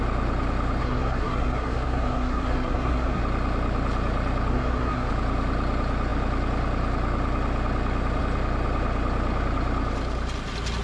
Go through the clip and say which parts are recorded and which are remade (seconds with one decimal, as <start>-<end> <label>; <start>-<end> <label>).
0.0-0.8 recorded; 0.8-3.2 remade; 3.2-4.5 recorded; 4.5-5.1 remade; 5.1-10.8 recorded